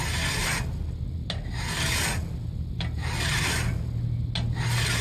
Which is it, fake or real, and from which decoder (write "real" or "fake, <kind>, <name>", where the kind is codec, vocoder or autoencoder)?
real